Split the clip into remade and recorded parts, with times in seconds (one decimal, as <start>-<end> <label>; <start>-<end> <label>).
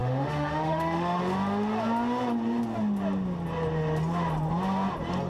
0.0-1.2 remade; 1.2-5.3 recorded